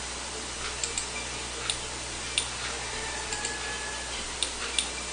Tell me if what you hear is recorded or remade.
recorded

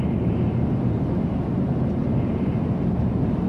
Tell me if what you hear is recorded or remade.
remade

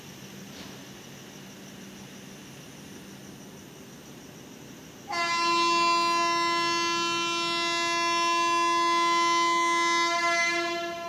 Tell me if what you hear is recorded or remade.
recorded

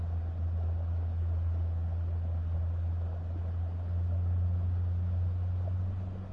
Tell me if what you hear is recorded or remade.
recorded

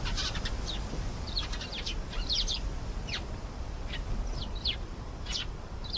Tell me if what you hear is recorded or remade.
remade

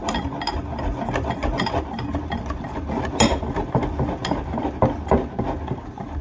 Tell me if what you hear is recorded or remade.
recorded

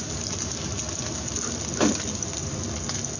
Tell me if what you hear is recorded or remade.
recorded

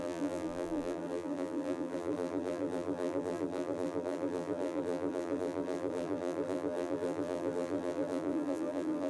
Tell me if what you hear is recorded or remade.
remade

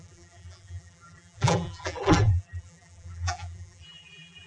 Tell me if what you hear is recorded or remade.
remade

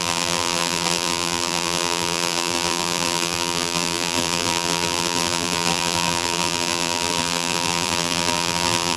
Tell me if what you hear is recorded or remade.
remade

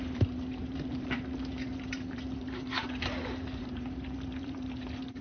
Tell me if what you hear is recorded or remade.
remade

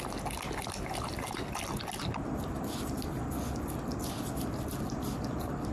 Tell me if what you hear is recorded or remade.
recorded